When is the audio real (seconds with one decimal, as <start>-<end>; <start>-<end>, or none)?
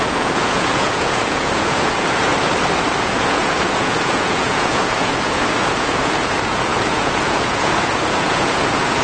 2.3-3.0